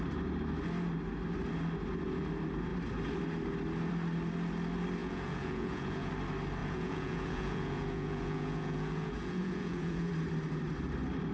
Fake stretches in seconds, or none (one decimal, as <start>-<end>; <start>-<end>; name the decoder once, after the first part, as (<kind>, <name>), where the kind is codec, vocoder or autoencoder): 5.0-6.1 (vocoder, Vocos); 6.6-10.1